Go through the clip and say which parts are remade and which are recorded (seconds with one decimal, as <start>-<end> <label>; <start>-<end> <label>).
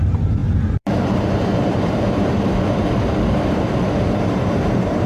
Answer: 0.0-5.1 remade